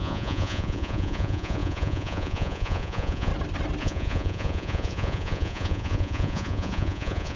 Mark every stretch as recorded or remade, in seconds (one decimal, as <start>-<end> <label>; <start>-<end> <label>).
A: 0.0-3.3 remade; 3.3-3.8 recorded; 3.8-7.4 remade